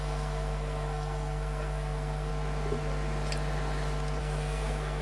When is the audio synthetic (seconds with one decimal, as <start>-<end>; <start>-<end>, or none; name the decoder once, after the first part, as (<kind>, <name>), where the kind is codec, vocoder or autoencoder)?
0.0-2.3 (codec, SNAC); 4.2-5.0